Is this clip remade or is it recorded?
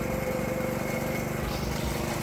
recorded